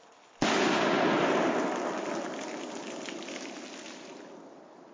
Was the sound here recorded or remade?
recorded